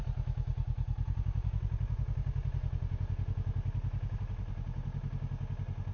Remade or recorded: recorded